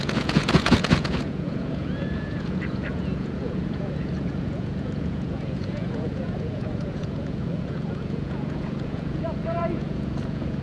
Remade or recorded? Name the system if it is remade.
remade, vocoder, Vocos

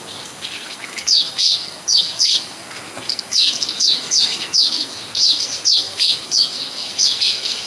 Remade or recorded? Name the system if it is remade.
remade, codec, SNAC